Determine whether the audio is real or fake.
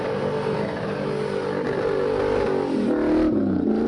real